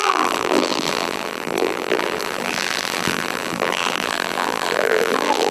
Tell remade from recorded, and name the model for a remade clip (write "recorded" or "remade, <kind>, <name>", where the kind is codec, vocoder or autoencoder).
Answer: remade, vocoder, BigVGAN v2